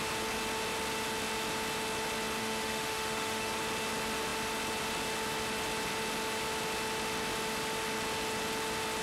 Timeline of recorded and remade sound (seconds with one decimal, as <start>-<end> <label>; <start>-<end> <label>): 0.0-2.4 recorded; 2.4-3.5 remade; 3.5-9.0 recorded